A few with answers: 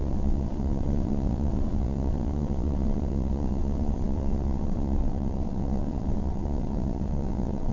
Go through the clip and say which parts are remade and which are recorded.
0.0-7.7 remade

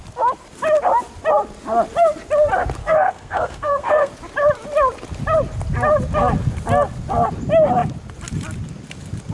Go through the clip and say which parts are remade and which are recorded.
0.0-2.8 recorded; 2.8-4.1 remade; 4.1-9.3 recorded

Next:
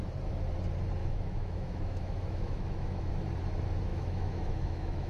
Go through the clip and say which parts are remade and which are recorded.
0.0-1.0 recorded; 1.0-3.1 remade; 3.1-3.9 recorded; 3.9-5.1 remade

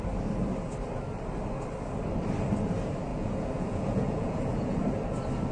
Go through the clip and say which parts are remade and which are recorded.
0.0-3.1 recorded; 3.1-4.8 remade; 4.8-5.5 recorded